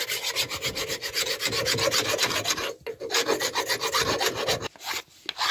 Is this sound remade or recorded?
recorded